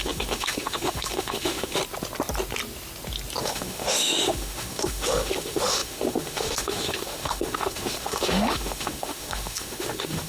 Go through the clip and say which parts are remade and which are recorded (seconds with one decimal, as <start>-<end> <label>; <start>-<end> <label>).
0.0-1.8 remade; 1.8-3.4 recorded; 3.4-10.3 remade